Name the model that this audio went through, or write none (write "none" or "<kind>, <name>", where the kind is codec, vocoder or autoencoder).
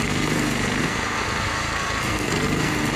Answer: codec, SNAC